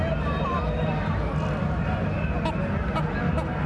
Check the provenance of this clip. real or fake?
real